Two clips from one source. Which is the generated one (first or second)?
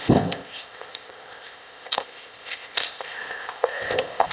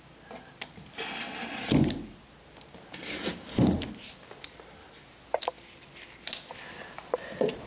first